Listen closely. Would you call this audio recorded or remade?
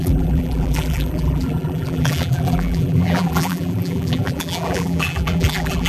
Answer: remade